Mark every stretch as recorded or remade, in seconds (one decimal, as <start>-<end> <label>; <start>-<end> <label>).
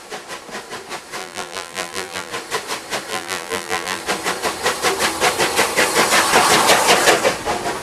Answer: 0.0-1.2 recorded; 1.2-2.3 remade; 2.3-3.1 recorded; 3.1-4.0 remade; 4.0-7.8 recorded